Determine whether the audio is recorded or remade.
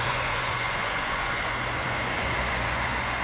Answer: remade